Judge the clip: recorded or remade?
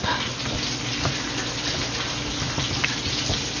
recorded